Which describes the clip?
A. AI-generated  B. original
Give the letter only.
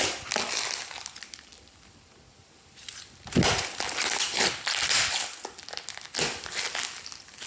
B